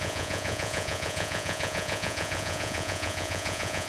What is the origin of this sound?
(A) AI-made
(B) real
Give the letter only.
A